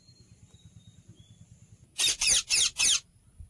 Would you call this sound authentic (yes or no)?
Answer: no